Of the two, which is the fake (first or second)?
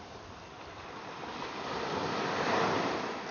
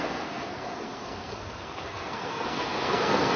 second